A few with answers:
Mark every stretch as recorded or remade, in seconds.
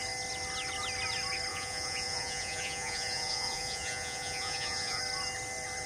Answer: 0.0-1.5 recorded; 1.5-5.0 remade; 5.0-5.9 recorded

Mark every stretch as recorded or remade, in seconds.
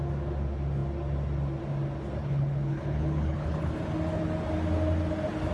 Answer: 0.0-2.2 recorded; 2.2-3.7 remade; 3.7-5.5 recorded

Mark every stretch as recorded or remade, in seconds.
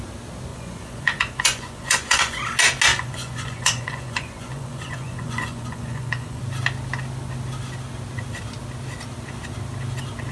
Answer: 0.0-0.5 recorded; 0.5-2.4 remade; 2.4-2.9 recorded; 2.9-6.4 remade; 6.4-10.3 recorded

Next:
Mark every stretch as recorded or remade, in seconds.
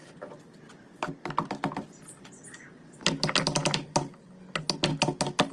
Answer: 0.0-5.5 recorded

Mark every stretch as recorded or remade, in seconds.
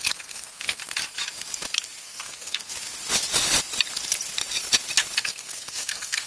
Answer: 0.0-0.8 remade; 0.8-2.0 recorded; 2.0-2.7 remade; 2.7-5.2 recorded; 5.2-6.3 remade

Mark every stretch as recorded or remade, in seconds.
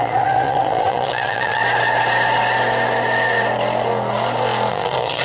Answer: 0.0-1.6 remade; 1.6-4.7 recorded; 4.7-5.2 remade